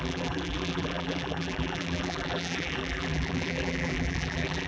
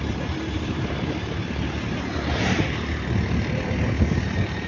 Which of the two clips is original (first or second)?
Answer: second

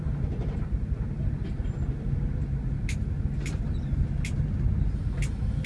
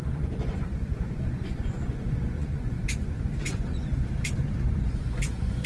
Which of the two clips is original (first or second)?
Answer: first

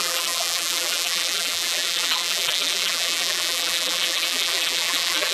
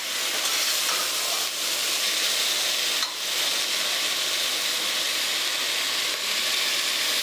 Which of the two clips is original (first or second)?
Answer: second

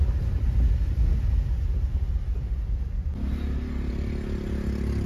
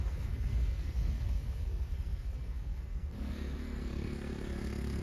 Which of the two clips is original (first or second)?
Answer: first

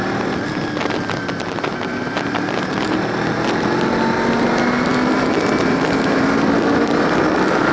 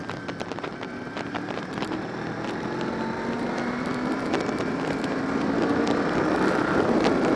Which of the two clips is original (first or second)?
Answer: first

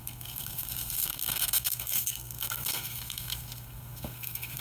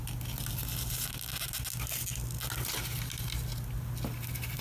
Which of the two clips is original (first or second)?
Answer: second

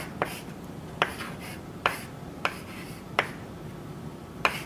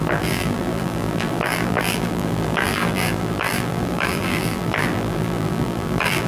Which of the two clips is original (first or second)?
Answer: first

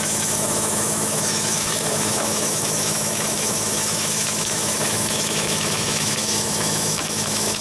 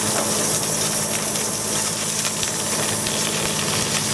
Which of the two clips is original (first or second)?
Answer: second